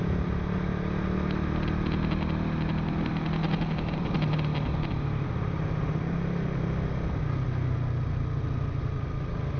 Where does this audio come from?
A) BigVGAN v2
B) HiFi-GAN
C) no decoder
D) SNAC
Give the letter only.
C